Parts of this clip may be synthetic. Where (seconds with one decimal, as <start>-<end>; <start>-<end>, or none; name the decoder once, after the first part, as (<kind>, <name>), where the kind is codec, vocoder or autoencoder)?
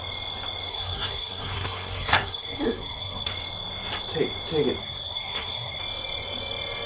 0.7-3.3 (codec, SNAC); 4.8-5.8